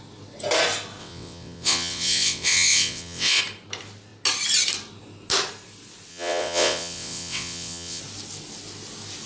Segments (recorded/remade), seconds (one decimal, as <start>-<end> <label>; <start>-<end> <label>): 0.0-1.0 recorded; 1.0-3.4 remade; 3.4-6.1 recorded; 6.1-8.0 remade; 8.0-9.3 recorded